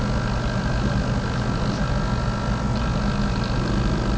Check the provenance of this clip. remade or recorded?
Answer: recorded